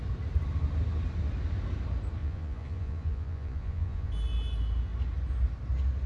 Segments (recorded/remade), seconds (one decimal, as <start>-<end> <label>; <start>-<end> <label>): 0.0-2.2 recorded; 2.2-4.1 remade; 4.1-6.1 recorded

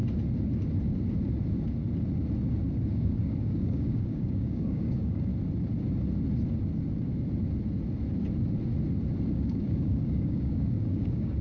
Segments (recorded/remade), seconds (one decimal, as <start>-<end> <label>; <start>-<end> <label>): 0.0-2.9 recorded; 2.9-5.3 remade; 5.3-9.3 recorded; 9.3-11.4 remade

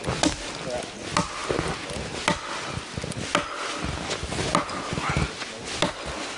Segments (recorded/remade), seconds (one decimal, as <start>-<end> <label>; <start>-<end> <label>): 0.0-6.4 recorded

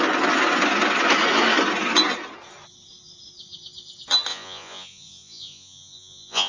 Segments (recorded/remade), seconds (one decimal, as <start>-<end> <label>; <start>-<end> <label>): 0.0-4.3 recorded; 4.3-6.5 remade

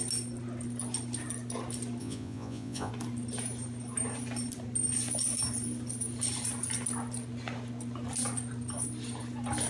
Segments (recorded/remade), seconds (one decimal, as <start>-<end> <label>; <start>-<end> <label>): 0.0-2.0 recorded; 2.0-2.9 remade; 2.9-9.7 recorded

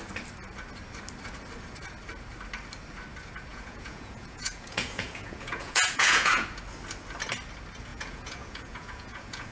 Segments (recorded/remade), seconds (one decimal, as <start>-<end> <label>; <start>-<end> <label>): 0.0-3.5 recorded; 3.5-6.6 remade; 6.6-7.9 recorded; 7.9-9.5 remade